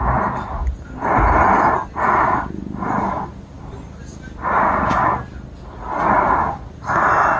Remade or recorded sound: recorded